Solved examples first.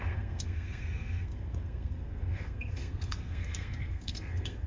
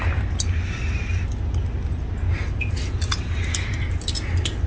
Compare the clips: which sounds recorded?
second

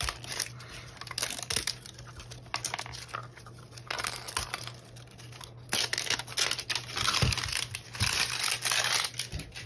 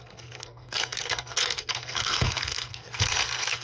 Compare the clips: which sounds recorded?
first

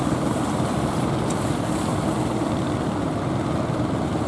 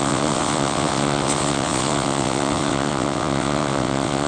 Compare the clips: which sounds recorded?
first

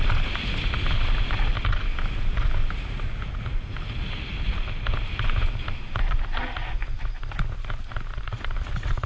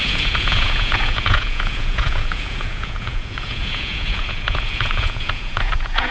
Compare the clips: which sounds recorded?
first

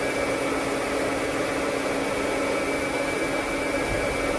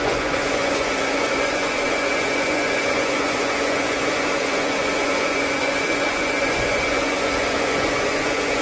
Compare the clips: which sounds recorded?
first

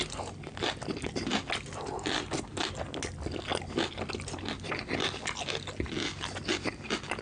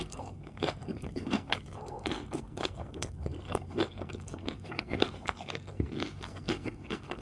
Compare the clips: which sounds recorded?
first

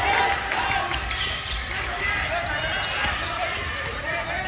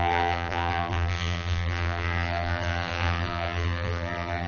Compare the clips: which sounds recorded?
first